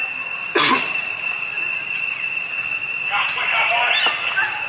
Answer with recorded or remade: recorded